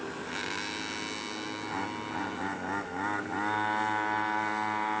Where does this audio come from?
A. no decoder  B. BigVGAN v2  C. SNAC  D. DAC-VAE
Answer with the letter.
A